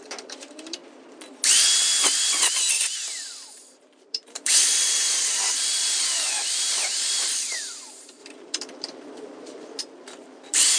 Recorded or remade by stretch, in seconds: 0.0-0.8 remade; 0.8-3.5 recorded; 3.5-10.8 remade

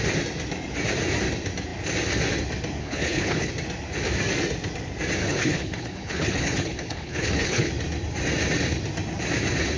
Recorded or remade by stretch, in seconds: 0.0-2.8 recorded; 2.8-3.5 remade; 3.5-5.2 recorded; 5.2-7.7 remade; 7.7-9.8 recorded

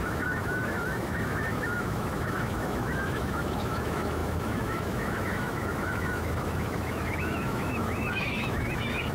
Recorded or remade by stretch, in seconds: 0.0-9.1 remade

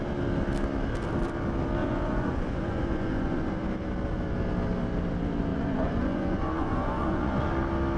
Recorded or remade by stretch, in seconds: 0.0-1.8 recorded; 1.8-3.5 remade; 3.5-5.5 recorded; 5.5-7.5 remade; 7.5-8.0 recorded

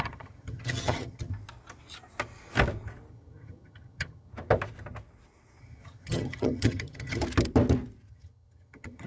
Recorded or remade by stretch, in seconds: 0.0-1.3 remade; 1.3-3.1 recorded; 3.1-4.3 remade; 4.3-5.6 recorded; 5.6-7.2 remade; 7.2-8.1 recorded; 8.1-9.1 remade